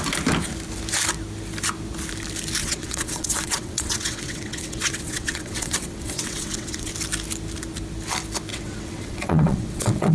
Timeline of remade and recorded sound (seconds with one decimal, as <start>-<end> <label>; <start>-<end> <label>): 0.0-2.6 recorded; 2.6-6.9 remade; 6.9-8.5 recorded; 8.5-10.1 remade